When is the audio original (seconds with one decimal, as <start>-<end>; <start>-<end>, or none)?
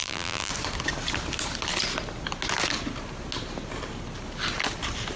0.5-5.2